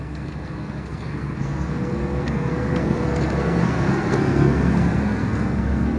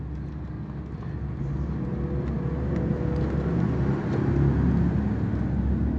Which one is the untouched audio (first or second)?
second